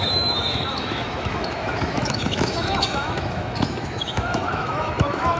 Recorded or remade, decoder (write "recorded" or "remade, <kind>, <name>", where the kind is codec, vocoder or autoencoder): remade, autoencoder, DAC-VAE